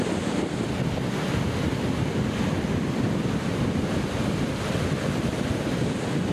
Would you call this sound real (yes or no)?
yes